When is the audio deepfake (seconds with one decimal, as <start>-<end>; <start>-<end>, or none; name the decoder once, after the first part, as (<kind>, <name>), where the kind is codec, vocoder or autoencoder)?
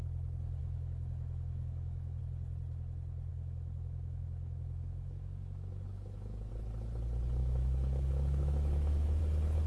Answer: 0.6-2.2 (autoencoder, DAC-VAE); 3.3-6.5; 7.4-9.2